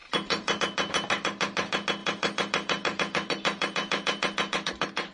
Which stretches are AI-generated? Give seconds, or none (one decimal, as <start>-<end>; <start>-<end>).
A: 0.0-0.6; 2.0-5.1